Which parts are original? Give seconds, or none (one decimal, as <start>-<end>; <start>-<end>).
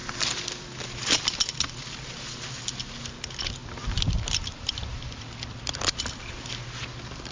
0.0-3.6; 6.0-7.3